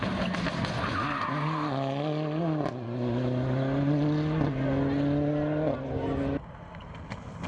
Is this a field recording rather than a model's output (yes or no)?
yes